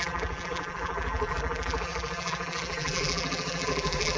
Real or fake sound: fake